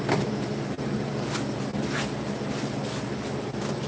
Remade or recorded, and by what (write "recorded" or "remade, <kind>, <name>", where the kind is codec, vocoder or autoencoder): recorded